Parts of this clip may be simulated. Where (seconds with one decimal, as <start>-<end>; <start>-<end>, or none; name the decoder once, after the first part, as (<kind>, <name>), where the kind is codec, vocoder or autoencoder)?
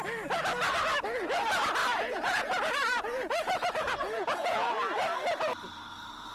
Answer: 1.8-5.0 (vocoder, Vocos)